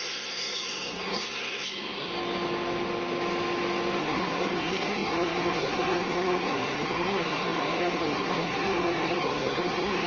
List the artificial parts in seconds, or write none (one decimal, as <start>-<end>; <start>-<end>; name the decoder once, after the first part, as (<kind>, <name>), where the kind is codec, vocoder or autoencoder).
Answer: 0.0-2.1 (codec, SNAC); 4.0-10.1